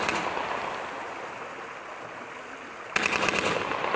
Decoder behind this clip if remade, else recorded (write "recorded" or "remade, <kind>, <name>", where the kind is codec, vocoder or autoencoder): recorded